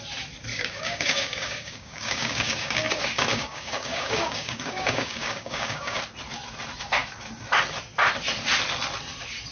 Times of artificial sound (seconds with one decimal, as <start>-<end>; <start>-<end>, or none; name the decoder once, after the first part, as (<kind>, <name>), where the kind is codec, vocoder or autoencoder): 0.5-2.9 (codec, DAC); 3.3-6.0